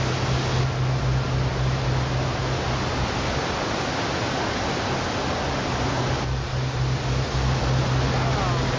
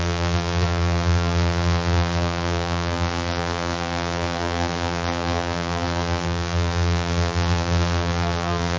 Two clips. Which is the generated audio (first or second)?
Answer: second